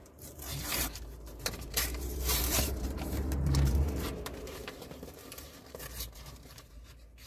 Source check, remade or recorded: remade